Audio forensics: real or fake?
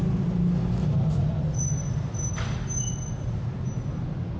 real